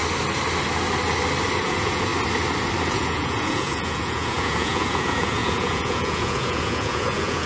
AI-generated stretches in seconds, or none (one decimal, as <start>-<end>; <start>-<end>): 1.6-2.1; 2.9-7.5